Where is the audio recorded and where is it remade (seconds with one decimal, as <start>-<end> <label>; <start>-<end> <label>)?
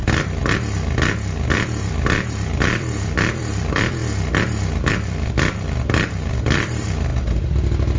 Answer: 0.0-0.4 remade; 0.4-1.5 recorded; 1.5-4.0 remade; 4.0-4.9 recorded; 4.9-7.1 remade; 7.1-8.0 recorded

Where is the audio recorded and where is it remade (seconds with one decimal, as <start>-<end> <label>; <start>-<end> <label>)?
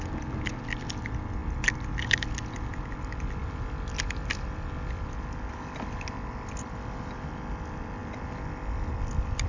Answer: 0.0-9.5 recorded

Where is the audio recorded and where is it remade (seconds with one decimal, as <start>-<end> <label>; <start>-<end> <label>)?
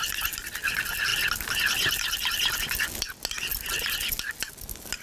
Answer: 0.0-5.0 recorded